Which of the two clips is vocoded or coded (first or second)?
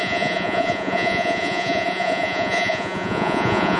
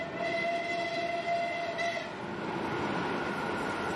first